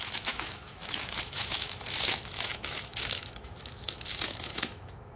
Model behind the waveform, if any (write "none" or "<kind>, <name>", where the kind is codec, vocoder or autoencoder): autoencoder, DAC-VAE